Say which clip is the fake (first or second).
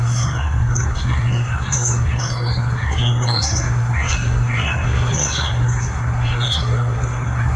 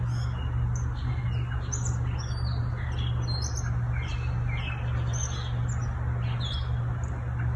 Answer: first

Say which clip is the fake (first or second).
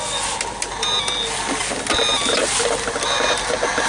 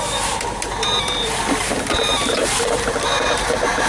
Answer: second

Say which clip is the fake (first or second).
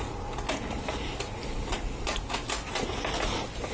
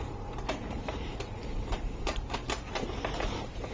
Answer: second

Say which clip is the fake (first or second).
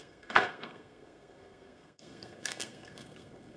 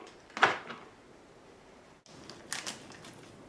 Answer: first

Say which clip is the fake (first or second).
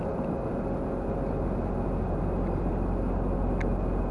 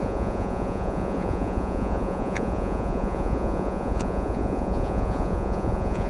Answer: second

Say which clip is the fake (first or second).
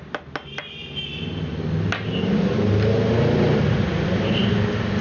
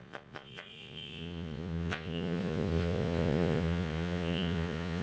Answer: second